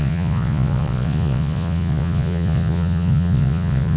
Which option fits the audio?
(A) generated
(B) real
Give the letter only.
A